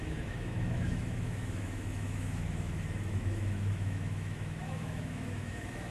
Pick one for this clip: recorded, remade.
remade